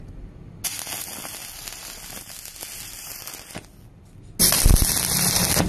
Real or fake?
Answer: real